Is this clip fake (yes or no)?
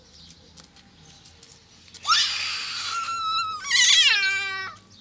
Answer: no